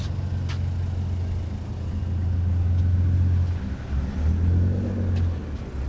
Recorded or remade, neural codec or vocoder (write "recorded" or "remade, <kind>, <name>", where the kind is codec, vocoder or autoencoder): recorded